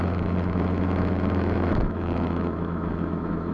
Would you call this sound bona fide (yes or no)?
no